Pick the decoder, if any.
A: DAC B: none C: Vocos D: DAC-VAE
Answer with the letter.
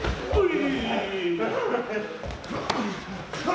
B